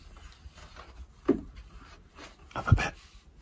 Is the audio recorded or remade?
recorded